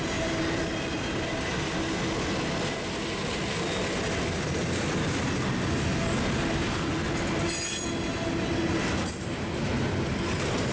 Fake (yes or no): no